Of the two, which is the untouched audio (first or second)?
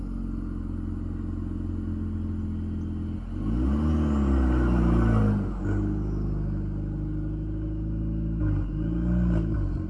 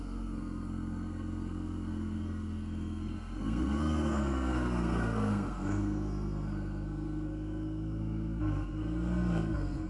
first